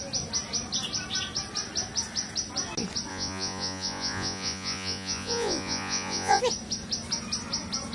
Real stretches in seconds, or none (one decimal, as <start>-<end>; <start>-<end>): 0.0-3.1; 6.4-7.9